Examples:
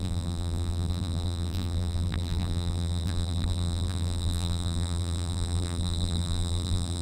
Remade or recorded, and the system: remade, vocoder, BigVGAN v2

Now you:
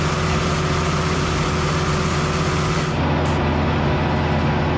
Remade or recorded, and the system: recorded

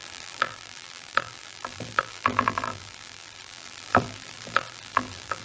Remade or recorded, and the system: remade, vocoder, BigVGAN v2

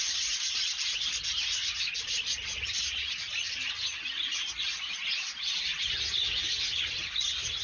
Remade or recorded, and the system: recorded